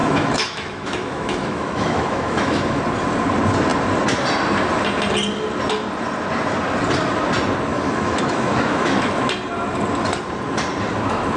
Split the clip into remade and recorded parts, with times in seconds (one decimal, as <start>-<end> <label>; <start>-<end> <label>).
0.0-2.8 remade; 2.8-7.7 recorded; 7.7-9.2 remade; 9.2-11.4 recorded